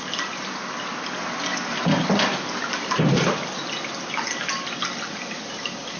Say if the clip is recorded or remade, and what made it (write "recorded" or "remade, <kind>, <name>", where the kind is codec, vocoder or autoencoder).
recorded